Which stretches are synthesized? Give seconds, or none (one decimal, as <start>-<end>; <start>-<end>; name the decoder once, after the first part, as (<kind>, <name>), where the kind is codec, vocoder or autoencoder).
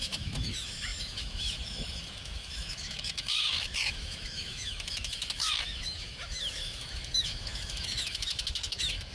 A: 0.0-9.1 (autoencoder, DAC-VAE)